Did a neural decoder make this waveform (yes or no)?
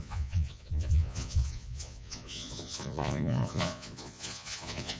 yes